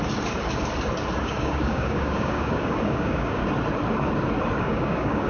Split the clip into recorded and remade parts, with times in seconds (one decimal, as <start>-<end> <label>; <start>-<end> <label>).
0.0-1.2 recorded; 1.2-3.4 remade; 3.4-4.6 recorded; 4.6-5.3 remade